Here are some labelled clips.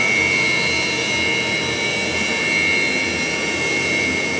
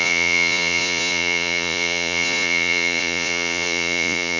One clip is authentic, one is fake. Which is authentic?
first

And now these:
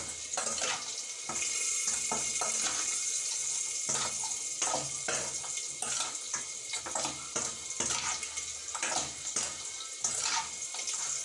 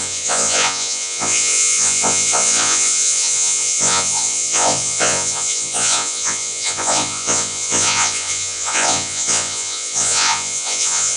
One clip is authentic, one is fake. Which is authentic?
first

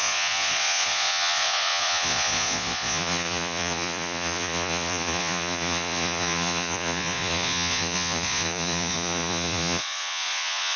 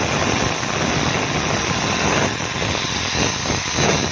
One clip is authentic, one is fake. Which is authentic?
second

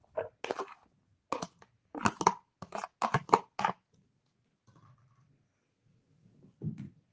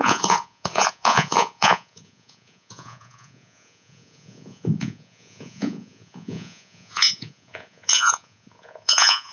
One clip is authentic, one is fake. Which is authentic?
first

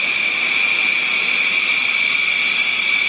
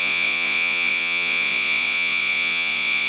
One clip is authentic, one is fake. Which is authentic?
first